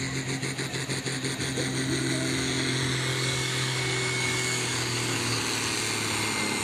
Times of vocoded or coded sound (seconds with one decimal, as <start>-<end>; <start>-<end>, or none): 3.1-5.4

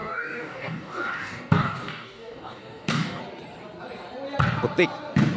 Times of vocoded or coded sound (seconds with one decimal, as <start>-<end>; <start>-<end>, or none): 0.0-3.2

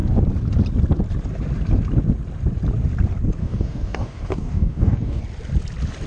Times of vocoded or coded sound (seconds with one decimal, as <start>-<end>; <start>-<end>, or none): 3.4-5.2

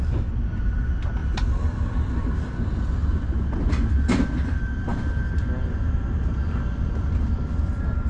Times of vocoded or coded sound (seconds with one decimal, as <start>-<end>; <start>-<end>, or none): none